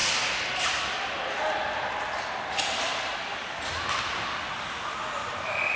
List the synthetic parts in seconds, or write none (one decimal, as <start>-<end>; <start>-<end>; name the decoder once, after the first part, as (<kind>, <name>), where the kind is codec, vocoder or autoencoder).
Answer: none